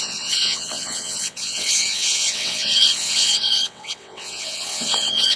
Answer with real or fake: fake